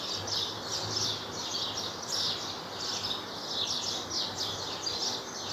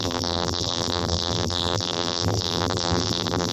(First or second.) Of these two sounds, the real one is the first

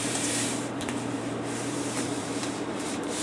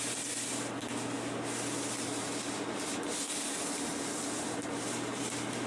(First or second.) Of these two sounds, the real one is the second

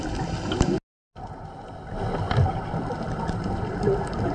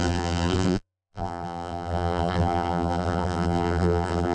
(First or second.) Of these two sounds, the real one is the first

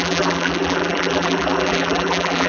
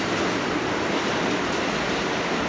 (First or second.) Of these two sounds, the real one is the second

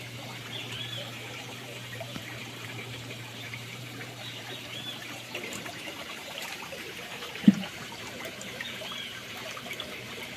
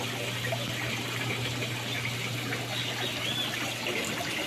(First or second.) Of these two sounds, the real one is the second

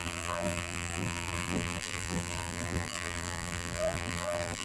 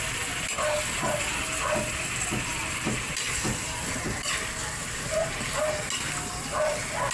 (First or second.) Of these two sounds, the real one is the second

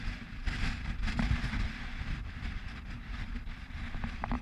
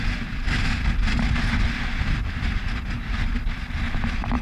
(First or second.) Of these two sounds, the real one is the second